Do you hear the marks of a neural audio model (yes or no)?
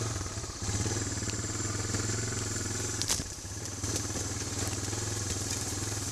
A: yes